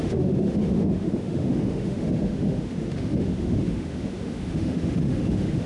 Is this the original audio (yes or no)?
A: no